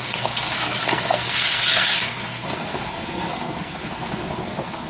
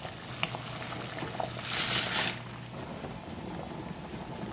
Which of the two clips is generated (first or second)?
first